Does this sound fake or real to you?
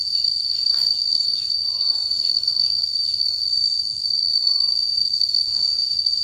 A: fake